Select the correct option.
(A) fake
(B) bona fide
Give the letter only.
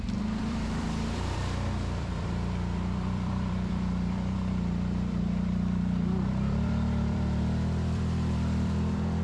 A